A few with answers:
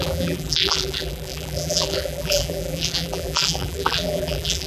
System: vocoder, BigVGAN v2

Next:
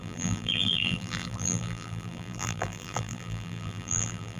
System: vocoder, BigVGAN v2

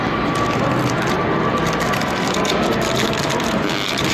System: none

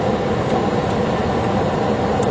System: none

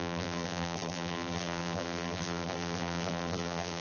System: vocoder, BigVGAN v2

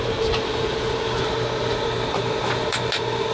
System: vocoder, BigVGAN v2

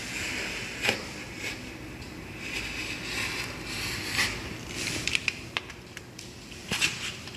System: none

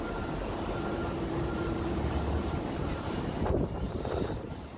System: vocoder, BigVGAN v2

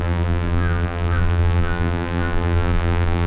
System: vocoder, BigVGAN v2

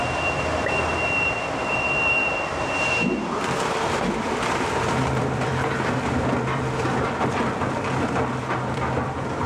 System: vocoder, BigVGAN v2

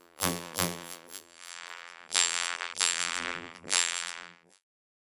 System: vocoder, BigVGAN v2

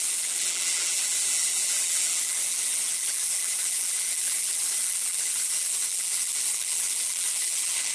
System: vocoder, BigVGAN v2